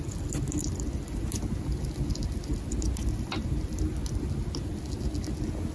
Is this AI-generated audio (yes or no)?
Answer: no